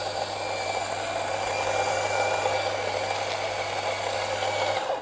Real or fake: real